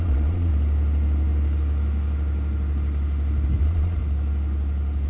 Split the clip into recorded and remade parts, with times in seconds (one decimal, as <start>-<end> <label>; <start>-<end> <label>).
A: 0.0-0.5 remade; 0.5-3.6 recorded; 3.6-4.0 remade; 4.0-5.1 recorded